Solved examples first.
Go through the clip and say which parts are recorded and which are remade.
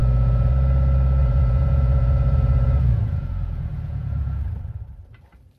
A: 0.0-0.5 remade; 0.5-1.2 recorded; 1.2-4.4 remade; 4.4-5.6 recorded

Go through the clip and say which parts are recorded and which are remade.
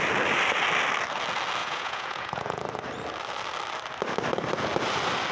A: 0.0-1.6 recorded; 1.6-2.6 remade; 2.6-5.3 recorded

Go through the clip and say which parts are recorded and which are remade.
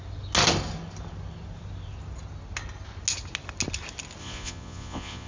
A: 0.0-4.2 recorded; 4.2-5.3 remade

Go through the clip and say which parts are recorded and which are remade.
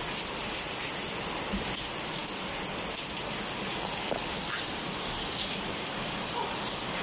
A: 0.0-7.0 recorded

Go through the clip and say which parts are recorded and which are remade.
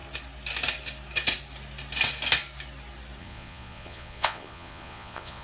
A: 0.0-3.2 recorded; 3.2-5.4 remade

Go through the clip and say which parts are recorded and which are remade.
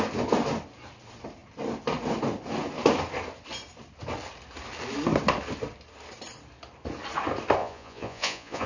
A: 0.0-7.6 recorded; 7.6-8.7 remade